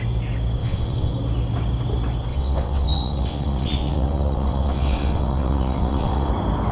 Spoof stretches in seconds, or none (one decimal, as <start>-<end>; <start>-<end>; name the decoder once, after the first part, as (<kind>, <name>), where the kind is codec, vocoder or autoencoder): 0.6-1.1 (vocoder, WaveNeXt); 2.3-6.3